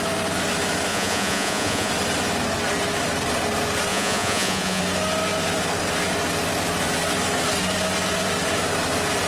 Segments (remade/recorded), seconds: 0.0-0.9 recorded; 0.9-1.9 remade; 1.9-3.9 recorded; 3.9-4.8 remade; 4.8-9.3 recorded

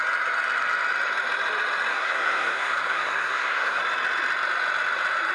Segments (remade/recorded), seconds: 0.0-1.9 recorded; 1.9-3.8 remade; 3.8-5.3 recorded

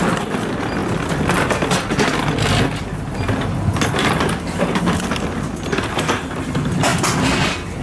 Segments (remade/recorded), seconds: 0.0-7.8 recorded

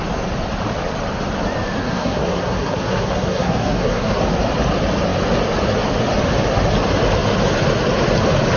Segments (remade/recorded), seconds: 0.0-1.8 recorded; 1.8-4.2 remade; 4.2-8.6 recorded